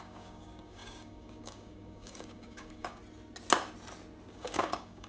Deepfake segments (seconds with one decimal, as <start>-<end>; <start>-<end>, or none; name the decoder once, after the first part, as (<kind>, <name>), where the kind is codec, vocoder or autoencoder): 0.0-3.0 (codec, DAC); 4.3-5.1